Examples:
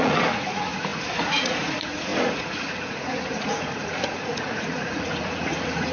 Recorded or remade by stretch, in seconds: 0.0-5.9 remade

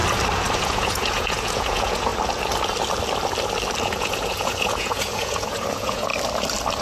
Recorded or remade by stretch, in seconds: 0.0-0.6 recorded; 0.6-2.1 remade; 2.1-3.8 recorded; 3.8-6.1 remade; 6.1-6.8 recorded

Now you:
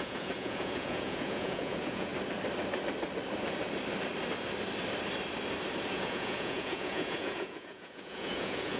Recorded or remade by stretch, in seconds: 0.0-2.1 remade; 2.1-5.9 recorded; 5.9-8.8 remade